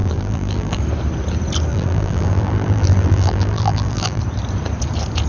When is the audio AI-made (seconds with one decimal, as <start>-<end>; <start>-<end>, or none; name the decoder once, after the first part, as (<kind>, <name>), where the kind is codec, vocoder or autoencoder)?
0.0-0.8 (vocoder, BigVGAN v2); 1.7-4.2